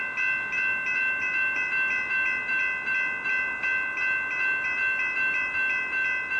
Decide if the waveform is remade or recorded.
recorded